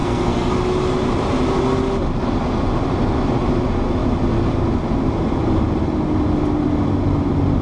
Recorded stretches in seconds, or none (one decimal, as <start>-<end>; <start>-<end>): 0.5-7.6